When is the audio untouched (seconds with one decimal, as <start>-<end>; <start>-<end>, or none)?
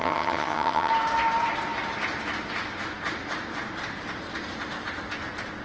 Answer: 0.9-5.6